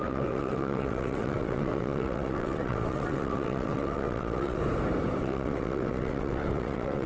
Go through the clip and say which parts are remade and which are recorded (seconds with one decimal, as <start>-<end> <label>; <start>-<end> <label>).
0.0-4.6 remade; 4.6-5.2 recorded; 5.2-7.1 remade